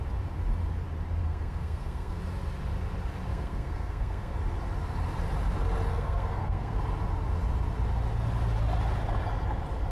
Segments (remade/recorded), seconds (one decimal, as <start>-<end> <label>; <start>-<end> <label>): 0.0-1.2 recorded; 1.2-2.2 remade; 2.2-3.3 recorded; 3.3-4.3 remade; 4.3-5.9 recorded; 5.9-6.8 remade; 6.8-9.9 recorded